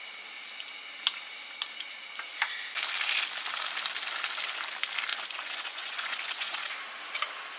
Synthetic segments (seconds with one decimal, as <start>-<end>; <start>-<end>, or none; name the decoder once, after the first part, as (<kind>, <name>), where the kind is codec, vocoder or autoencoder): 5.1-6.7 (vocoder, Vocos)